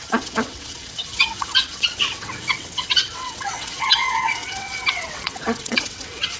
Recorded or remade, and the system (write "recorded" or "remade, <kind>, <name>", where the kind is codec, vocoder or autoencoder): remade, vocoder, WaveNeXt